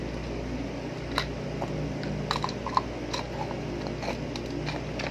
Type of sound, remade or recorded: recorded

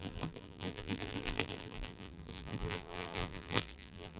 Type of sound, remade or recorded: remade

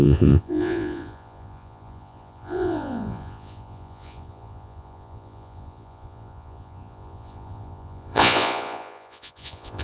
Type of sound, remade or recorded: remade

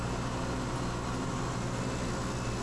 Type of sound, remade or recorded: recorded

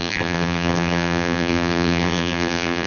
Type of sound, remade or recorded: remade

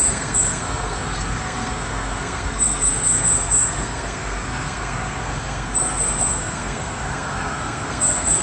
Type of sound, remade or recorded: remade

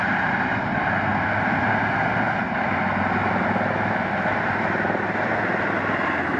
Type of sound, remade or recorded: recorded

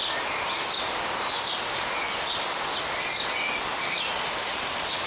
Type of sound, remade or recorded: recorded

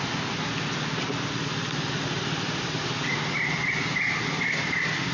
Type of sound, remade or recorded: recorded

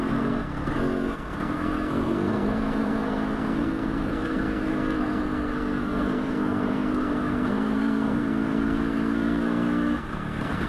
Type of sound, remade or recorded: remade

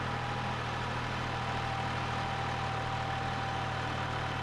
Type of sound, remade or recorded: recorded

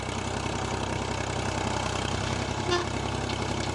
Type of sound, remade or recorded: recorded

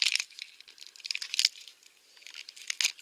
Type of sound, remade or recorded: recorded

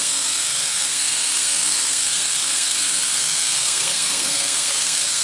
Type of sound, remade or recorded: remade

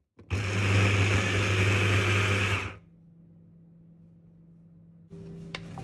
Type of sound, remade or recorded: recorded